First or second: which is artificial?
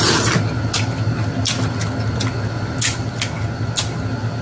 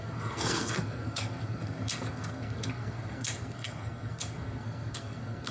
second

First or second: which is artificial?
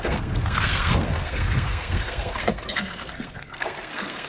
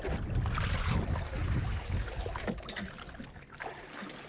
first